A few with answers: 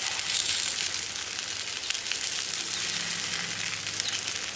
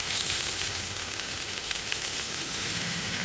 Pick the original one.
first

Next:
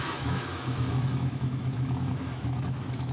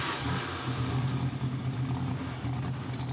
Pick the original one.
second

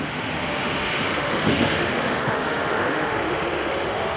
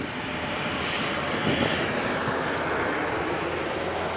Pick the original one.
second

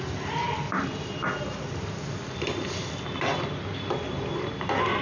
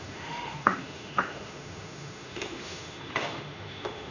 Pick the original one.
first